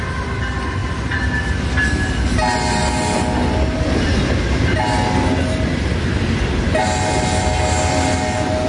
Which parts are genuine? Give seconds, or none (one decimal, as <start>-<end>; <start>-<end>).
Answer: 0.0-8.7

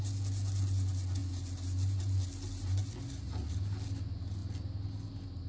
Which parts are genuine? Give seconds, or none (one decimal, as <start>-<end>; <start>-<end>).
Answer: 0.0-5.5

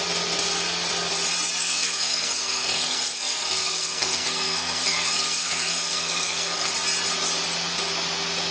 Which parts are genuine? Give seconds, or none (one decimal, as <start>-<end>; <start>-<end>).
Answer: 0.0-1.6; 6.7-8.5